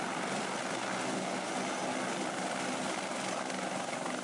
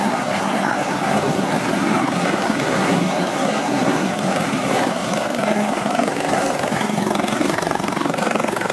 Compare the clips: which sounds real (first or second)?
first